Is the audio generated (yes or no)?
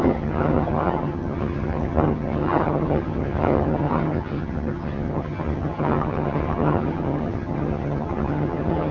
yes